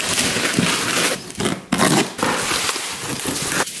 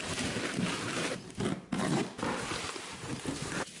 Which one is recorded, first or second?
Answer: first